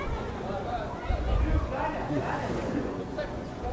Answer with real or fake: fake